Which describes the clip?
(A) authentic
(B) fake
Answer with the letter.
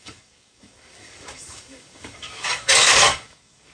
B